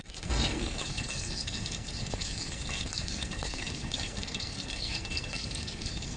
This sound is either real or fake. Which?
fake